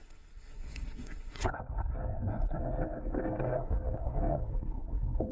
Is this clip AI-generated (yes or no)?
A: yes